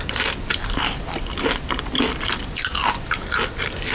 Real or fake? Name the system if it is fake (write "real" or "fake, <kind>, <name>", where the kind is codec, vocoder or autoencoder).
real